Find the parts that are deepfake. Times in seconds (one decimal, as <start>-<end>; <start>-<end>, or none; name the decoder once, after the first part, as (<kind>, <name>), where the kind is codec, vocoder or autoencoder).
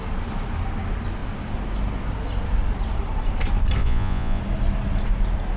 3.8-4.4 (vocoder, Vocos)